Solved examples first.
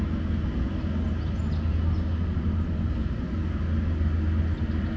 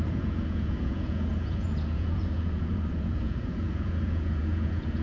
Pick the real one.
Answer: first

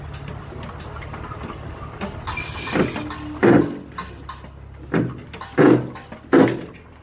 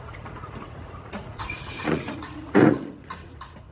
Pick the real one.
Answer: first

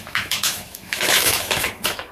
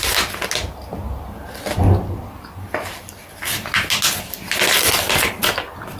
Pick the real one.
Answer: second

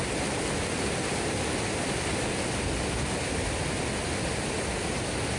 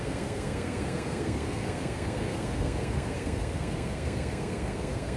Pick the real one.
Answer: first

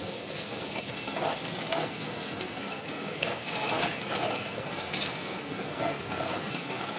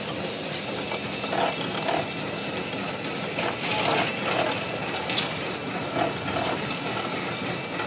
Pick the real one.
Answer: second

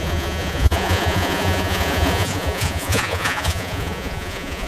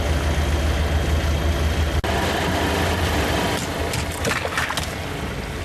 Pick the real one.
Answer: second